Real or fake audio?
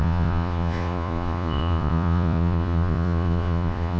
fake